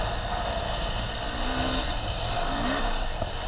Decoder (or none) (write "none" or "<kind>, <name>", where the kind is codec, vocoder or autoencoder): none